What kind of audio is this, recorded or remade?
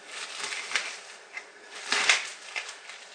recorded